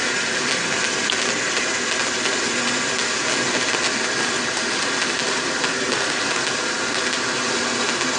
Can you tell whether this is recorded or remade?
recorded